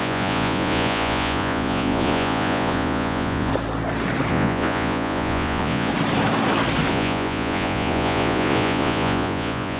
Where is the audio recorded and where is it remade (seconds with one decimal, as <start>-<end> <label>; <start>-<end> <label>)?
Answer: 0.0-3.5 remade; 3.5-4.3 recorded; 4.3-5.9 remade; 5.9-6.9 recorded; 6.9-9.8 remade